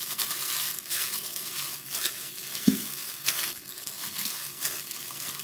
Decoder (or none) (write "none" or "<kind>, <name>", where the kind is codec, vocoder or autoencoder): codec, SNAC